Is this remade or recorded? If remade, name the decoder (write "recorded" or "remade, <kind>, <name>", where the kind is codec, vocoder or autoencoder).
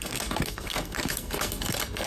remade, codec, SNAC